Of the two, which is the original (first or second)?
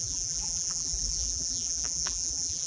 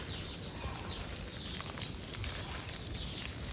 second